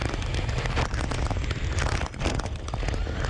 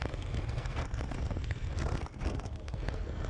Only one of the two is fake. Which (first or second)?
second